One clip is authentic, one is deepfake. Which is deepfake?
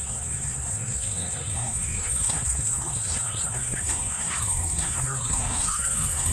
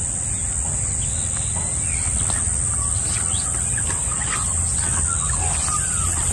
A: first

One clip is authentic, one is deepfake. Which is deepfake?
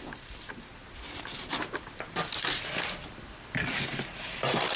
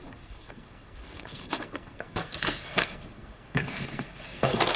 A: second